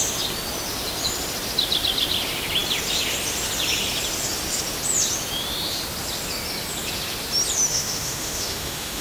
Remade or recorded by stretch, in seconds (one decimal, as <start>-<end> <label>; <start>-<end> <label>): 0.0-7.7 recorded; 7.7-9.0 remade